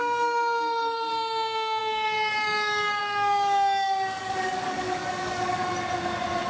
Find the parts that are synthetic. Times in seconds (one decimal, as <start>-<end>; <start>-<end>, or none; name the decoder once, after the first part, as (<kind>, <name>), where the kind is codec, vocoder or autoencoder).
0.0-5.7 (codec, DAC)